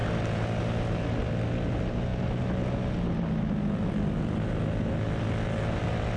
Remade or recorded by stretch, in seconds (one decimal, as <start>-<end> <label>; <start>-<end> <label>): 0.0-6.2 recorded